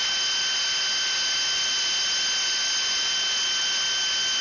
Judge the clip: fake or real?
real